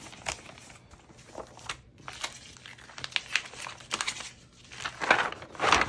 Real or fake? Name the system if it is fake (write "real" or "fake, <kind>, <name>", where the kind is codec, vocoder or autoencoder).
real